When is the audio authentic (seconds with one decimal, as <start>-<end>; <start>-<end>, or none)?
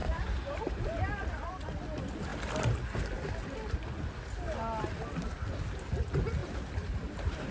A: 0.0-6.4